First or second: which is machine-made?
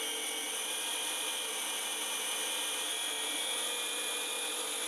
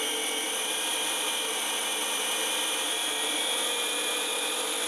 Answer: second